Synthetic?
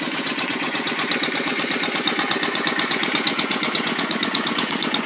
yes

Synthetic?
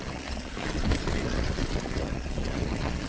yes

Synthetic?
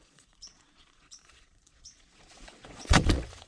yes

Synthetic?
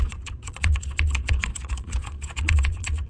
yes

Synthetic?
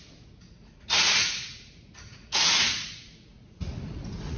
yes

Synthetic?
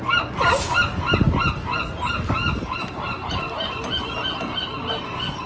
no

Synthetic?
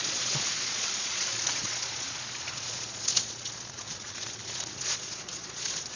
yes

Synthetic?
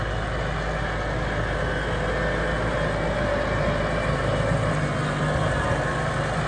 no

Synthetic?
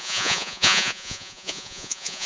yes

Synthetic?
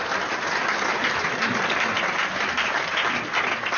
no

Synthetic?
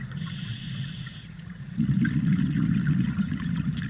yes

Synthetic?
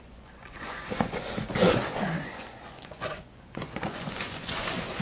yes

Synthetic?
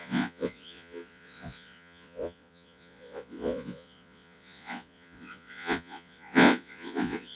yes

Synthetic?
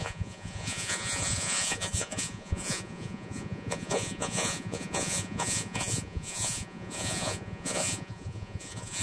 yes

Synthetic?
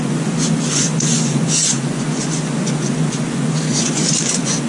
yes